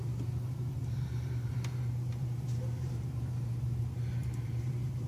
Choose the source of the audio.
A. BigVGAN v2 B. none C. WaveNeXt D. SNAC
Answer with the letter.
A